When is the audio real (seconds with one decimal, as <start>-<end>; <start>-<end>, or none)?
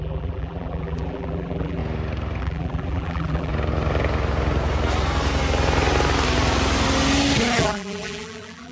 1.8-2.4; 3.5-7.6